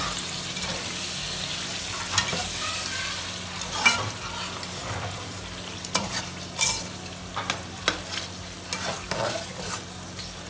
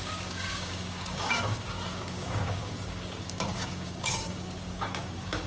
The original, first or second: first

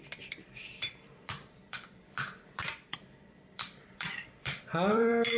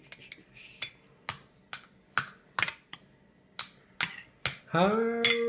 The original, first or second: second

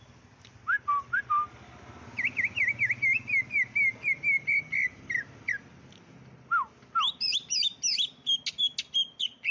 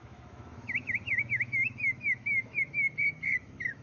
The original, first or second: first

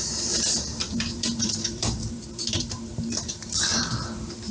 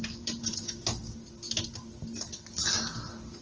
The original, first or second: second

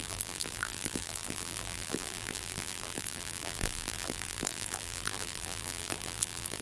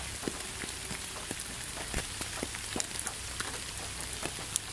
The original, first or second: second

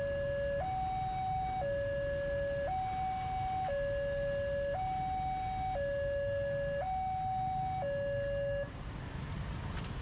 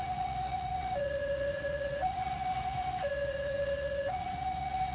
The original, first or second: first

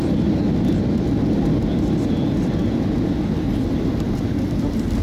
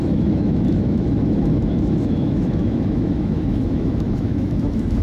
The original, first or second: first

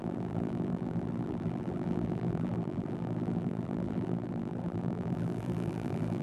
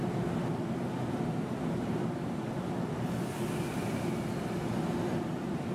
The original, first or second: second